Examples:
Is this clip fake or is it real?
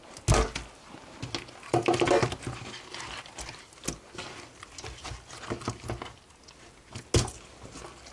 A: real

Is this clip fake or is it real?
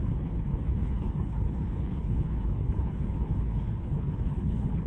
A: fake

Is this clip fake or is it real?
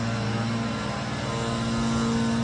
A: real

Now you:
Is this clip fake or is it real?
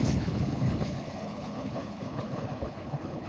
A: fake